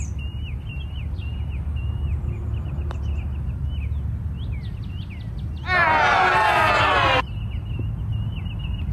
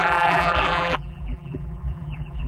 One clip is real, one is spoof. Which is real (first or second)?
first